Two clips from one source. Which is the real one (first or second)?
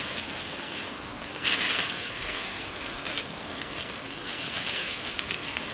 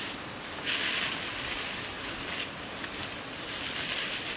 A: second